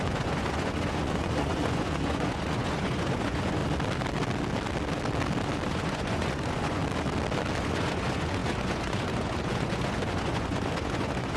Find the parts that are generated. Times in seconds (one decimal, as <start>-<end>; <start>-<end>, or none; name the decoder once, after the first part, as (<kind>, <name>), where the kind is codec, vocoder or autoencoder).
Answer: 0.0-3.6 (vocoder, Vocos); 5.7-6.8; 7.6-11.4